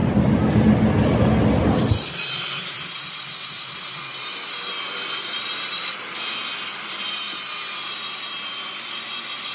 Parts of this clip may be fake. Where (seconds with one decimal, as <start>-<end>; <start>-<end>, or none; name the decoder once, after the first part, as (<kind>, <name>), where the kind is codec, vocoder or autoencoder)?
0.0-6.4 (vocoder, BigVGAN v2); 7.1-9.5